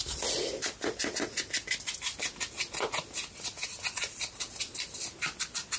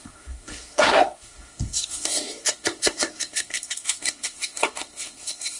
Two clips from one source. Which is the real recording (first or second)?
first